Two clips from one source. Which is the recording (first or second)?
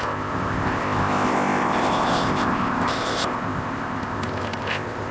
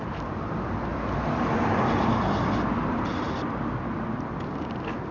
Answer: second